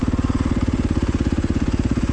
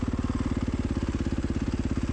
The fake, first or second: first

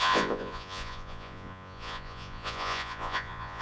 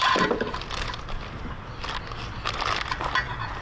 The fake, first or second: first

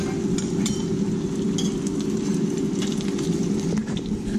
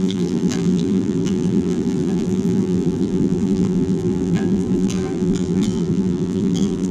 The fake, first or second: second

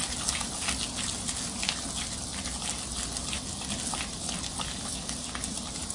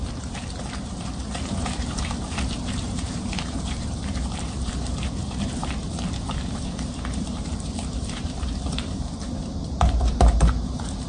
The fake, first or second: second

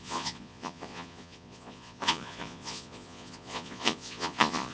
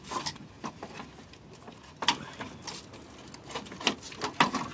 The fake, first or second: first